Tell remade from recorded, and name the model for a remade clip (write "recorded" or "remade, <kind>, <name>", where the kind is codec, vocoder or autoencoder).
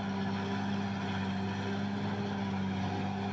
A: recorded